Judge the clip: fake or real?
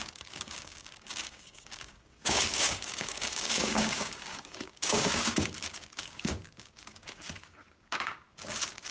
fake